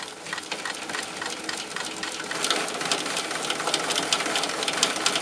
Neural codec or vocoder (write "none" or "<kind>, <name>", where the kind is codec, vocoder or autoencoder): none